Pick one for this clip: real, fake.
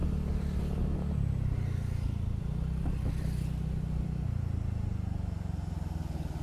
real